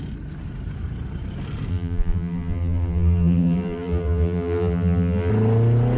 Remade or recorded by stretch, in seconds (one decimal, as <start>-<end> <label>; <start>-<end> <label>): 0.0-1.7 recorded; 1.7-5.3 remade; 5.3-6.0 recorded